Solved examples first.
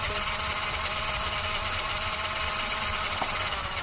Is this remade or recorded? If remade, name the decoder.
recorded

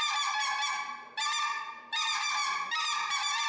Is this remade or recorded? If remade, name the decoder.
recorded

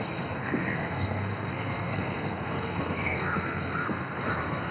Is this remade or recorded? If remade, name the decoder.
remade, codec, SNAC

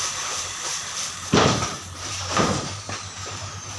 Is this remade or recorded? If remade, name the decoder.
remade, vocoder, BigVGAN v2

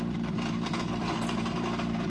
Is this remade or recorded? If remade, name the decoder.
recorded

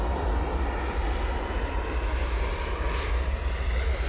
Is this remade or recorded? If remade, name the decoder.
recorded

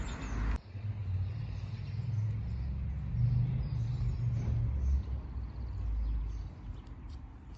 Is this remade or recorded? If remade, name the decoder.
recorded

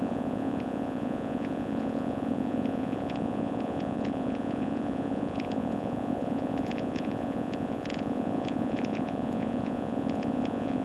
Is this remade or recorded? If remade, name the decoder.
remade, vocoder, Vocos